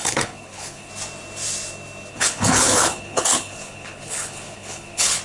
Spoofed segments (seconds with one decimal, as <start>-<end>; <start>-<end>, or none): 0.0-0.9; 2.1-5.2